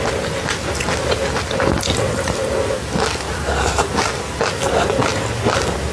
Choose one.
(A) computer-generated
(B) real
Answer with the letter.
B